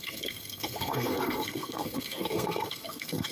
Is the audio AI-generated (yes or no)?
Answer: yes